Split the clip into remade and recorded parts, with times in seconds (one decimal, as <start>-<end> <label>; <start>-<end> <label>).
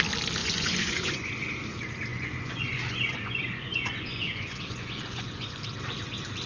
0.0-0.4 recorded; 0.4-1.3 remade; 1.3-2.1 recorded; 2.1-5.6 remade; 5.6-6.5 recorded